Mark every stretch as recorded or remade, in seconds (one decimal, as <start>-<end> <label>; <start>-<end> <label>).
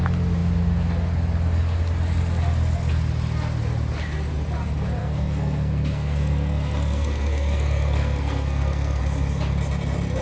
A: 0.0-5.0 recorded; 5.0-9.0 remade; 9.0-10.2 recorded